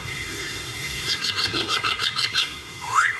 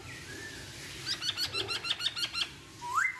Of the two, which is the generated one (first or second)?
first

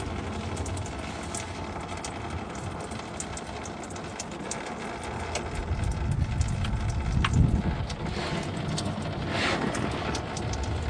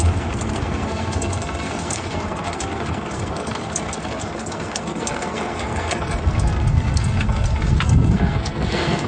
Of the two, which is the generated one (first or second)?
second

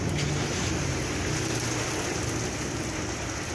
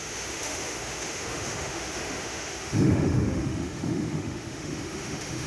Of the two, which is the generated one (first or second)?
second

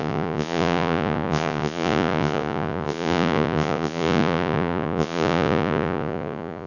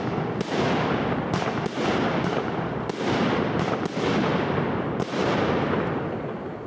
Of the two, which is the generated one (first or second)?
first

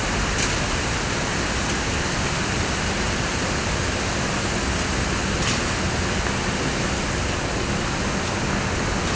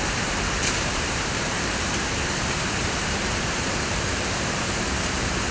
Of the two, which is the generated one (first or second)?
second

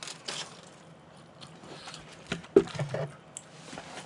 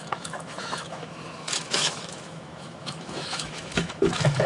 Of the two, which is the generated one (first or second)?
second